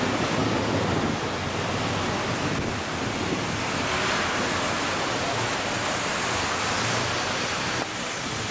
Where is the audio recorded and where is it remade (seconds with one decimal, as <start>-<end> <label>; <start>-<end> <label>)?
0.0-8.5 recorded